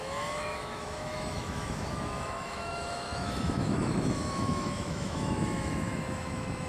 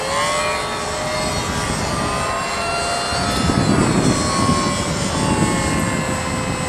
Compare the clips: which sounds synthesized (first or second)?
first